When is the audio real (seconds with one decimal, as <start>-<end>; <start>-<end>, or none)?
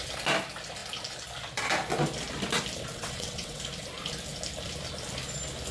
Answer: 0.0-2.9; 3.6-5.7